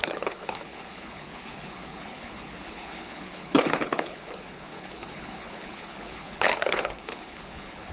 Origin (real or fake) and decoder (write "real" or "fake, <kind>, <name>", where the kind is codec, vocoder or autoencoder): fake, codec, HILCodec